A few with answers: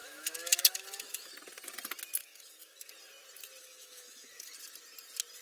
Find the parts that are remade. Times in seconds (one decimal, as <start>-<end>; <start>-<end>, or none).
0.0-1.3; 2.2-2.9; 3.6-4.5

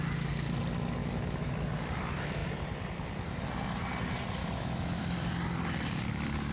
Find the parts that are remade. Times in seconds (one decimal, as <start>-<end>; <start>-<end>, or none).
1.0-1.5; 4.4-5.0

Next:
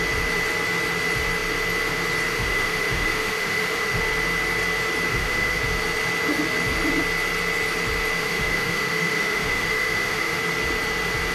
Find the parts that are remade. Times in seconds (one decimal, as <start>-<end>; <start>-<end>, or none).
2.3-4.0; 5.1-5.6; 8.2-10.4

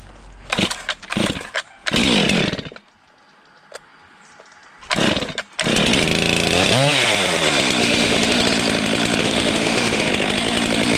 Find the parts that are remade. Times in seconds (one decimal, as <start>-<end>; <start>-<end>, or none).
7.8-8.4; 9.2-10.1